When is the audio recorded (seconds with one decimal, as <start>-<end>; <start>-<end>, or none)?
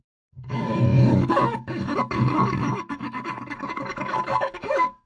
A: none